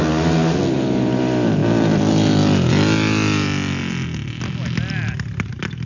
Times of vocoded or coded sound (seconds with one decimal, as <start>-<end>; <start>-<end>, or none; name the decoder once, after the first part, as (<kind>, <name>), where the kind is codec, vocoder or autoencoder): none